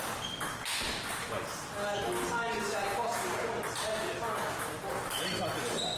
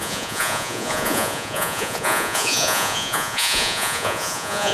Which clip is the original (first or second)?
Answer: first